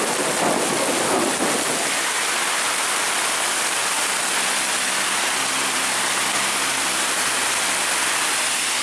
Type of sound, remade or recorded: recorded